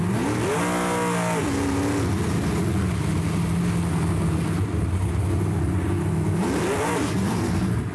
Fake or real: real